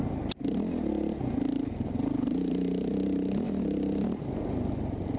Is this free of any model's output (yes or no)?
yes